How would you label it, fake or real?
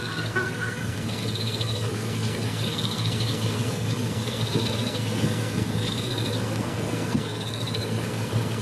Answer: fake